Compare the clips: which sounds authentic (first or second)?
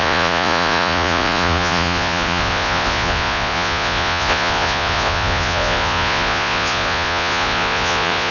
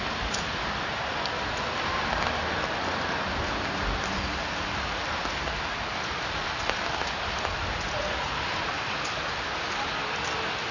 second